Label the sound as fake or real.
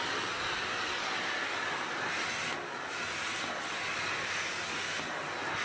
real